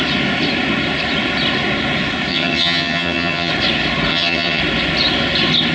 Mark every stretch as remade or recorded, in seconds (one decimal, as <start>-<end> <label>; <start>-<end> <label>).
0.0-2.3 recorded; 2.3-3.5 remade; 3.5-4.1 recorded; 4.1-4.6 remade; 4.6-5.7 recorded